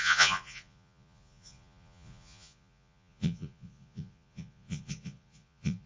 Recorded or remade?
remade